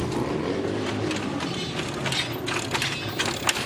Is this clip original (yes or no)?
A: yes